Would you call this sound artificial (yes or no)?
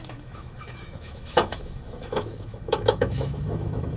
yes